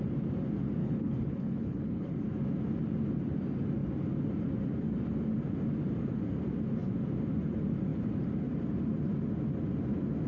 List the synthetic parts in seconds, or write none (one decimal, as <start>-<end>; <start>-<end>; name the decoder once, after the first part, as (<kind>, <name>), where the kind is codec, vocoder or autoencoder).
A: 0.8-2.1 (codec, HILCodec)